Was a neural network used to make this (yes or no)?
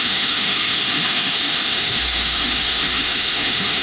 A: yes